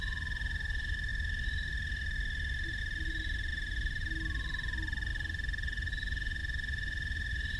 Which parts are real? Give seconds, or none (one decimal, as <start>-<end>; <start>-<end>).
0.0-7.6